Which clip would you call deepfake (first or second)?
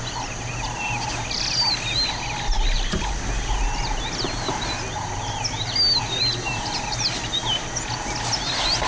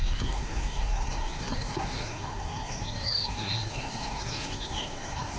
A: second